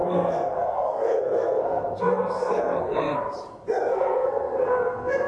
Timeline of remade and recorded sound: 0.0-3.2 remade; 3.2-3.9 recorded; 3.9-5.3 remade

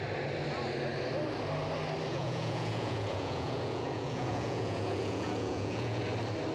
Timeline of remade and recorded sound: 0.0-2.1 recorded; 2.1-6.0 remade; 6.0-6.5 recorded

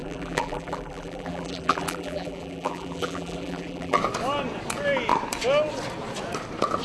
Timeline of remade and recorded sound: 0.0-4.0 remade; 4.0-6.8 recorded

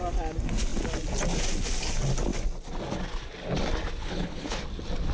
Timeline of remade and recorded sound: 0.0-4.0 recorded; 4.0-4.6 remade; 4.6-5.1 recorded

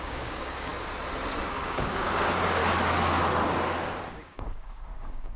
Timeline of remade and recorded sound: 0.0-0.7 remade; 0.7-1.5 recorded; 1.5-2.6 remade; 2.6-4.1 recorded; 4.1-5.4 remade

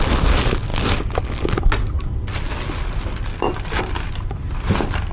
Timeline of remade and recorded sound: 0.0-5.1 recorded